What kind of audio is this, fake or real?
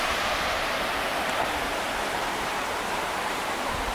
fake